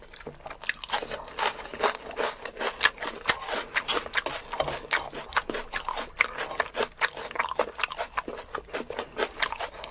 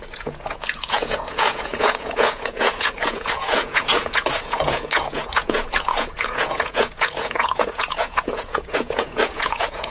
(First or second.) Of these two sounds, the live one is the first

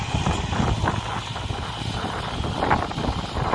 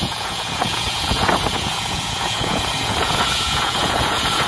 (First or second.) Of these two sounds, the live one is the first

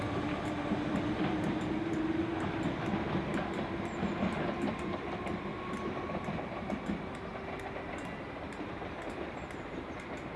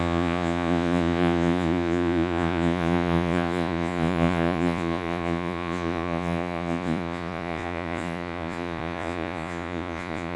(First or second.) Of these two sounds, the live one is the first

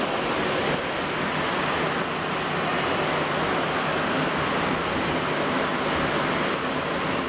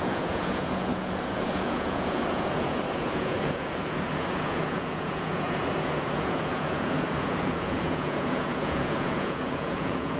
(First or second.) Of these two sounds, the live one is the first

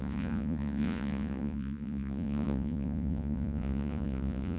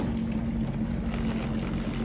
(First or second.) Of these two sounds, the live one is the second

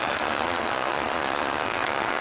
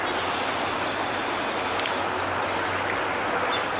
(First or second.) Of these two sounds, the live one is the second